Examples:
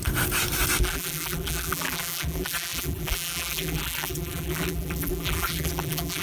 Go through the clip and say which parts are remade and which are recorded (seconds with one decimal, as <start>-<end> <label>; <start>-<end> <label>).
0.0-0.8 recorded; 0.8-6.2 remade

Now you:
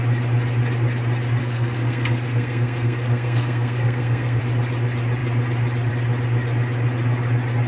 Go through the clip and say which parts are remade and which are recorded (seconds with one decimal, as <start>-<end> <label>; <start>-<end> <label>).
0.0-1.4 recorded; 1.4-4.4 remade; 4.4-7.7 recorded

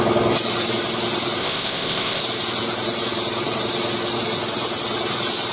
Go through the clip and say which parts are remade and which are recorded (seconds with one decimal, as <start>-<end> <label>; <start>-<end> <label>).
0.0-1.4 recorded; 1.4-2.2 remade; 2.2-5.5 recorded

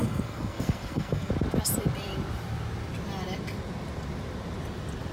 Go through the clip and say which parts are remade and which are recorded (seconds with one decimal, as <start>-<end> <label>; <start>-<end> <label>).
0.0-1.3 remade; 1.3-5.1 recorded

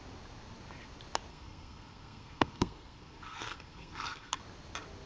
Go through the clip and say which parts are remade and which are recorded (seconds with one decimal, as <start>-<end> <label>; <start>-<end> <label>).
0.0-1.3 recorded; 1.3-4.4 remade; 4.4-5.1 recorded

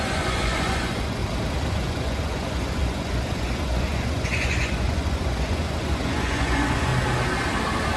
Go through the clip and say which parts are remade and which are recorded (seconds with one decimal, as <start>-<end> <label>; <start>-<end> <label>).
0.0-1.2 remade; 1.2-1.7 recorded; 1.7-6.9 remade; 6.9-8.0 recorded

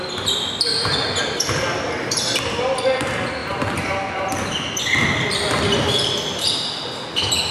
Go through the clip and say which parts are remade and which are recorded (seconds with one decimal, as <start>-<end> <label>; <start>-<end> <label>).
0.0-7.5 recorded